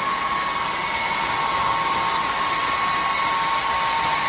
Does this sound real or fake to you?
real